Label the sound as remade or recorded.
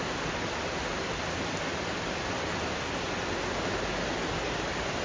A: recorded